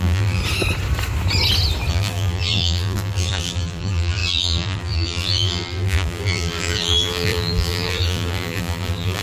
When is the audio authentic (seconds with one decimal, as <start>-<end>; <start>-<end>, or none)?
0.4-1.9